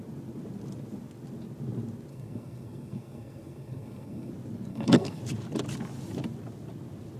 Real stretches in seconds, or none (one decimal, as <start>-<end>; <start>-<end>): 0.0-2.1; 4.3-4.7; 5.2-7.2